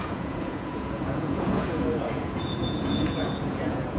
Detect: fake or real fake